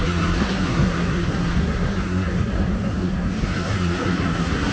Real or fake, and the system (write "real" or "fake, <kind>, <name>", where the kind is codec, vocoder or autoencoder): fake, codec, SNAC